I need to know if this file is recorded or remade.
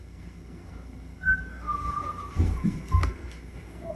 remade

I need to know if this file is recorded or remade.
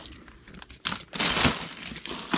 recorded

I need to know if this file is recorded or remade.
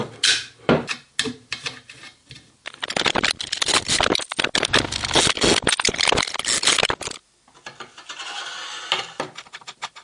recorded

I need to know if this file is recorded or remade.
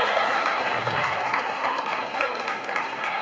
remade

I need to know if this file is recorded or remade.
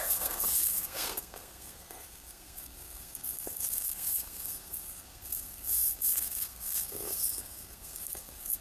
remade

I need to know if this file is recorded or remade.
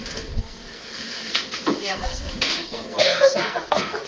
remade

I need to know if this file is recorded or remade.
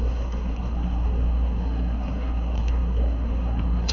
remade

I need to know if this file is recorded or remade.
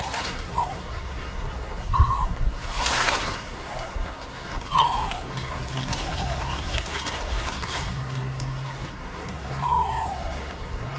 remade